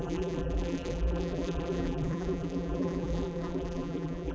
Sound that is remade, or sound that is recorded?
remade